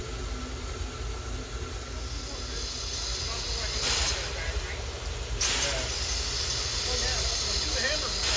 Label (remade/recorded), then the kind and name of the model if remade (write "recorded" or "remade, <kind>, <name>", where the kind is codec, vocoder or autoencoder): recorded